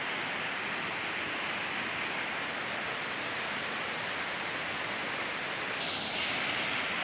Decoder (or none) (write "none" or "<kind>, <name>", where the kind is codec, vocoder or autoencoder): none